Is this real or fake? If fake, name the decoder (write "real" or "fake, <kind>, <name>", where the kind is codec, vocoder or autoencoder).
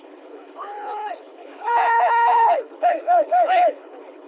fake, codec, HILCodec